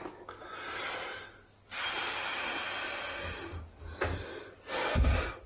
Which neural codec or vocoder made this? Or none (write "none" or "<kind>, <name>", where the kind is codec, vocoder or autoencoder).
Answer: none